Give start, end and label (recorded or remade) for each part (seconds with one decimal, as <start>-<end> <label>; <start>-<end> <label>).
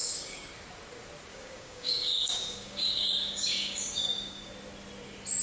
0.0-0.5 remade; 0.5-1.3 recorded; 1.3-4.5 remade; 4.5-5.4 recorded